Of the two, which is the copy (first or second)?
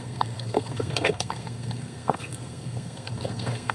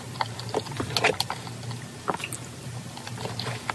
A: first